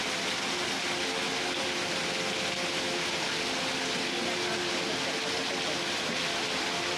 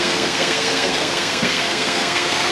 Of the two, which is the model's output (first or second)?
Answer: second